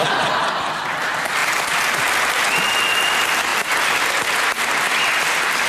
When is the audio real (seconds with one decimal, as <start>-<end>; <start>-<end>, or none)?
0.0-1.4; 2.2-5.7